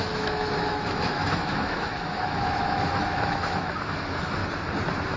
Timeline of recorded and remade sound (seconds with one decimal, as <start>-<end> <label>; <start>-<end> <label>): 0.0-4.4 remade; 4.4-5.2 recorded